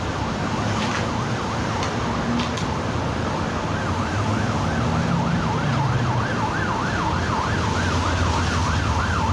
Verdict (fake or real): real